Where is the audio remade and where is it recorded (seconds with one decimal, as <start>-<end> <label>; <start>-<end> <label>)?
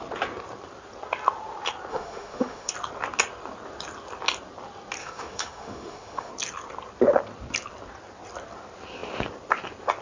0.0-1.9 recorded; 1.9-2.7 remade; 2.7-5.0 recorded; 5.0-6.3 remade; 6.3-10.0 recorded